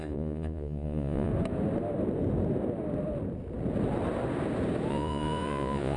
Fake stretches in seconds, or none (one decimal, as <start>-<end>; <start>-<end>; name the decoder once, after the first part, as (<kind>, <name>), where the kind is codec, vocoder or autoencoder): 0.0-1.3 (vocoder, Vocos); 4.9-6.0